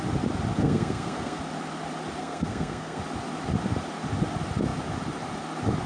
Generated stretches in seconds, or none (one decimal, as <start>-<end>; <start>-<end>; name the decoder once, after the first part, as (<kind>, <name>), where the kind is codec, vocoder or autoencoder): 0.6-1.4 (codec, SNAC); 2.2-3.0